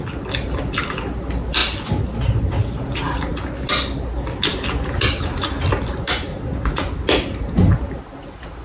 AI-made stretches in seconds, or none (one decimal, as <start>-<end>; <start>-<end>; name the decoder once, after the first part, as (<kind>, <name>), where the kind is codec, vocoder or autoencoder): 6.3-6.8 (vocoder, Vocos)